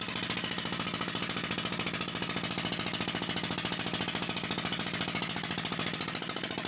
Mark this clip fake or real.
real